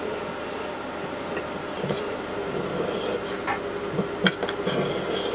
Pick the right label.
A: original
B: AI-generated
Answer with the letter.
A